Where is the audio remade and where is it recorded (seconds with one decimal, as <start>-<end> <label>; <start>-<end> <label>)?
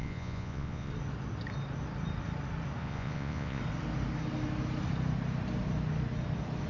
0.0-0.9 remade; 0.9-2.8 recorded; 2.8-3.6 remade; 3.6-6.7 recorded